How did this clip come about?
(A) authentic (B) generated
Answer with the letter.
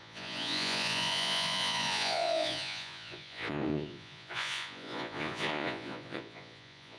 B